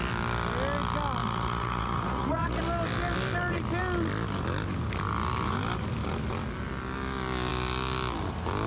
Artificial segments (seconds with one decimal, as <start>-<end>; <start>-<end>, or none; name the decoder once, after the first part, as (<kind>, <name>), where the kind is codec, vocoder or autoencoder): 1.2-2.6 (vocoder, Vocos)

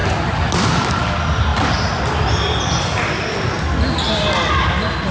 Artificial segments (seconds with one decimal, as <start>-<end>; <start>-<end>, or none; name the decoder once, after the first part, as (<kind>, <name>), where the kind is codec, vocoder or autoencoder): none